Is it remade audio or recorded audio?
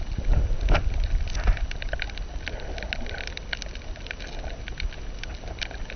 recorded